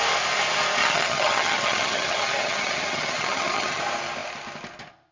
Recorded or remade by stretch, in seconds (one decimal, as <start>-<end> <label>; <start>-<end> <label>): 0.0-0.8 recorded; 0.8-3.8 remade; 3.8-5.1 recorded